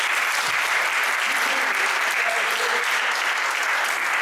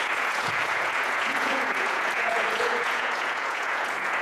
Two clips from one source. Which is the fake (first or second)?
second